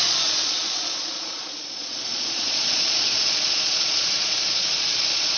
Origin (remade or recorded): remade